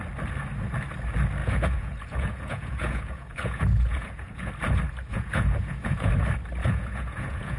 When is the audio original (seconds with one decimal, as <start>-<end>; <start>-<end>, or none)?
0.0-1.4; 4.5-5.1; 6.1-6.6